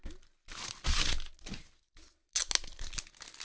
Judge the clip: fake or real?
real